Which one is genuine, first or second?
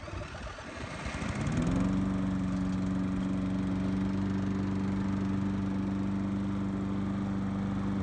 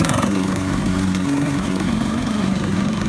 first